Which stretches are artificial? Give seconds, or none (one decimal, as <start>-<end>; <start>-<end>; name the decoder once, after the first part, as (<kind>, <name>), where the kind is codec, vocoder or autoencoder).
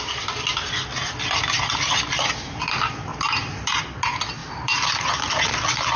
3.1-3.8 (vocoder, BigVGAN v2); 4.4-5.0